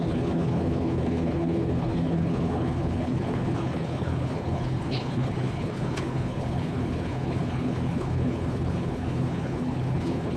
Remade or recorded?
remade